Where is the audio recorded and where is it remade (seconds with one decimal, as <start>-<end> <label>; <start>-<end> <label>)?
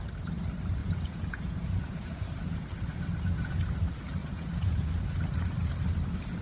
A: 0.0-0.8 recorded; 0.8-2.3 remade; 2.3-4.2 recorded; 4.2-4.9 remade; 4.9-6.4 recorded